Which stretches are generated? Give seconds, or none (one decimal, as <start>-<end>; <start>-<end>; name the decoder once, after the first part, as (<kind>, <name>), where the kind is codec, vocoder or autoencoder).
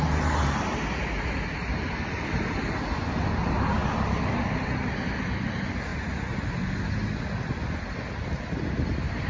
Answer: none